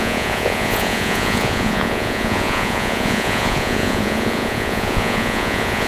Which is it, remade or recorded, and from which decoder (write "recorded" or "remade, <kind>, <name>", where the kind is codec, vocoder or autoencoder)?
remade, vocoder, Vocos